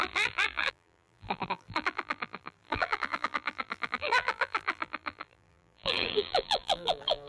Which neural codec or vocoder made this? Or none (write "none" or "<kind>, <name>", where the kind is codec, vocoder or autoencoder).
vocoder, BigVGAN v2